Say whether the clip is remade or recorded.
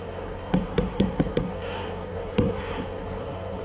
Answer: remade